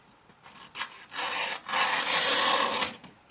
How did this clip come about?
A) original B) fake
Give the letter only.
A